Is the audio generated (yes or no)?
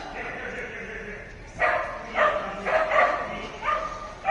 no